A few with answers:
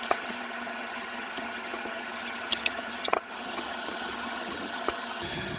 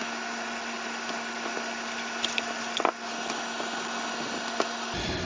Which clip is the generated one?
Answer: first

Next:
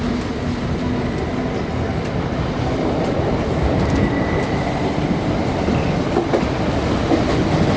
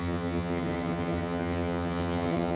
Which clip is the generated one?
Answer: second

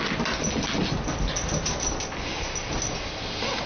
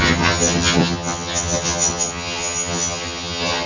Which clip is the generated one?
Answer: second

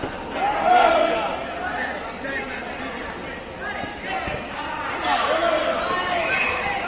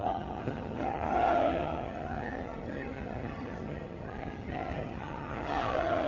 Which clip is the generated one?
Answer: second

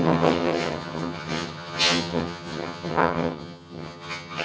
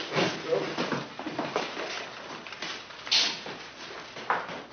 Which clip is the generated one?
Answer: first